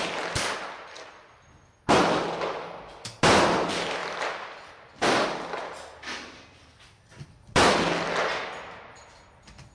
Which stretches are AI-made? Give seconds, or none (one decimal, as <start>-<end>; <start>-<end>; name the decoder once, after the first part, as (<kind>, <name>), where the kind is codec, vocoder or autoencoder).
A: none